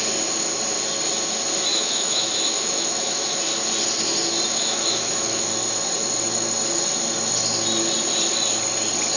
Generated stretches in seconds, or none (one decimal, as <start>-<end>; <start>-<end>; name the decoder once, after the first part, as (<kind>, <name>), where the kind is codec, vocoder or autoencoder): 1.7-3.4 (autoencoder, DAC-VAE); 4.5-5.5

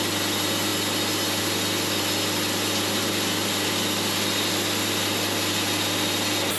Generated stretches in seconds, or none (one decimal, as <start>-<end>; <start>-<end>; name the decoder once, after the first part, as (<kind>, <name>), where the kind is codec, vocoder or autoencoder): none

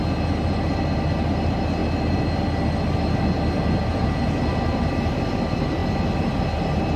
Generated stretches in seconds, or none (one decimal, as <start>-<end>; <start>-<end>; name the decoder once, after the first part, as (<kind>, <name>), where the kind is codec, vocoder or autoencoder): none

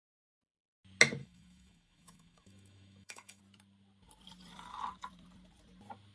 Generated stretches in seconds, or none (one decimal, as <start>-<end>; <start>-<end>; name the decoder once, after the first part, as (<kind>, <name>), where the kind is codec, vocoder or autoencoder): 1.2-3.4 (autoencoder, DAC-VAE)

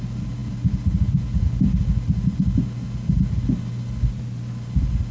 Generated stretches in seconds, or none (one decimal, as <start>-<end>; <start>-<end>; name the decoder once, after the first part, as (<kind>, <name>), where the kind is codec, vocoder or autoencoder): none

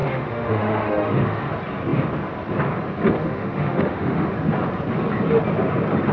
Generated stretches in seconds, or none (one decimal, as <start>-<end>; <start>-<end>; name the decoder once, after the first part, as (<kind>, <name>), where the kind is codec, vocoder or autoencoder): 0.0-1.5 (autoencoder, DAC-VAE); 3.2-4.3

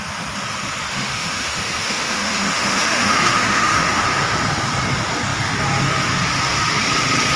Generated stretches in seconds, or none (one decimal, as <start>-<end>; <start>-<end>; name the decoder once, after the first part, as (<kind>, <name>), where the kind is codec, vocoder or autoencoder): 0.9-4.0 (autoencoder, DAC-VAE)

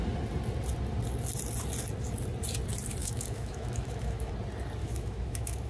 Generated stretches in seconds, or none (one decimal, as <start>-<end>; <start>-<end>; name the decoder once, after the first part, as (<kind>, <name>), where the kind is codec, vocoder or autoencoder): 3.0-4.3 (autoencoder, DAC-VAE); 4.8-5.7